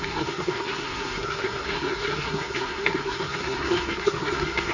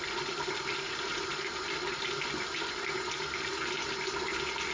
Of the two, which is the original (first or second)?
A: second